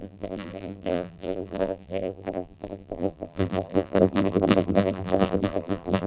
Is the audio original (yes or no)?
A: no